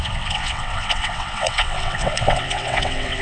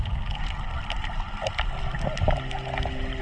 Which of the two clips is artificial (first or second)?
first